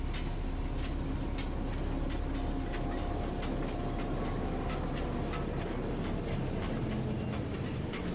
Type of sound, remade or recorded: recorded